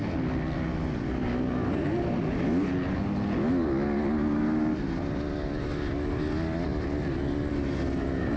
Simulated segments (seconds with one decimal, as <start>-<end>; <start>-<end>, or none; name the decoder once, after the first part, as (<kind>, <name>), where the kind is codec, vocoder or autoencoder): none